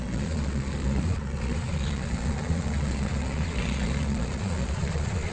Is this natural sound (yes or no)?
no